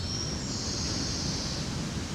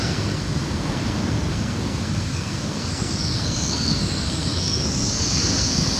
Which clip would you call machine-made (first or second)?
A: second